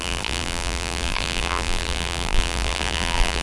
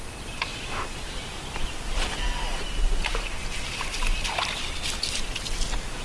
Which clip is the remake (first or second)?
first